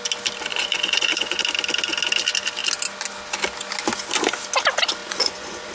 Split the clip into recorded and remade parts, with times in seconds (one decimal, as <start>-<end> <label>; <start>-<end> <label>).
0.0-0.5 recorded; 0.5-1.4 remade; 1.4-5.0 recorded; 5.0-5.7 remade